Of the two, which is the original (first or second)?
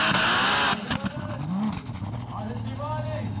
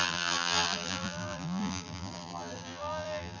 first